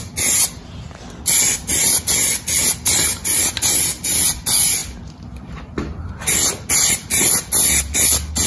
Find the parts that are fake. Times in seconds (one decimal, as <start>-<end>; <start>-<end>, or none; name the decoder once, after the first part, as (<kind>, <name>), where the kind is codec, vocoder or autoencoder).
none

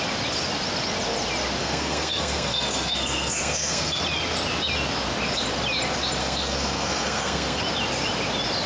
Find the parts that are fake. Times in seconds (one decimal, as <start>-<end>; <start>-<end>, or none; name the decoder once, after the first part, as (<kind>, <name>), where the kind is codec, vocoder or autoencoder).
1.6-4.0 (codec, SNAC); 6.2-7.6

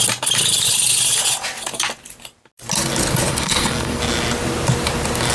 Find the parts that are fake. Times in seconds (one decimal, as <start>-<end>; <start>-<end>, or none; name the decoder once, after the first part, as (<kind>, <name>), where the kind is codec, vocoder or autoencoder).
3.3-4.0 (codec, SNAC)

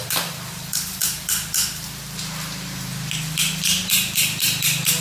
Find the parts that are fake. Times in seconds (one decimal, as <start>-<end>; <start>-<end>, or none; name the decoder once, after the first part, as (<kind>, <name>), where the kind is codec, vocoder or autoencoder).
none

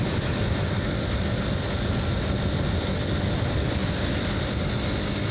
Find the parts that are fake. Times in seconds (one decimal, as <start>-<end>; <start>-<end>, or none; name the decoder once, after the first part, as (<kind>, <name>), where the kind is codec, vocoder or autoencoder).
none

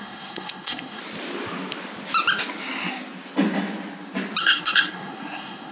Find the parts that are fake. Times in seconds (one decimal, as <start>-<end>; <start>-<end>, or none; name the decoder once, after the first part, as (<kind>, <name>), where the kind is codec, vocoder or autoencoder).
0.0-1.0 (codec, SNAC); 4.4-5.7

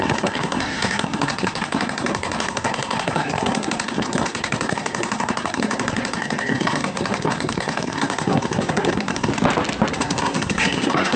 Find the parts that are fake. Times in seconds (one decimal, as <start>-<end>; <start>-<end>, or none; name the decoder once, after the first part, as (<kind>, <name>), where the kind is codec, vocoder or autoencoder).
0.0-9.3 (codec, SNAC); 9.9-11.2

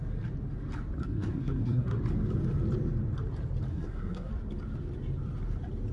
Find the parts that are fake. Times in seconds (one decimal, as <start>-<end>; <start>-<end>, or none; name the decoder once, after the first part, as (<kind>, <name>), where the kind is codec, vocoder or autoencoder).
1.0-2.0 (codec, SNAC); 3.7-4.3